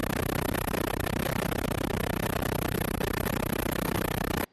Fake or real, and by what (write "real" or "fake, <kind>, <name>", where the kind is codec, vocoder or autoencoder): real